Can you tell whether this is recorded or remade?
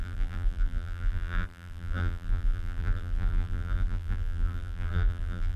remade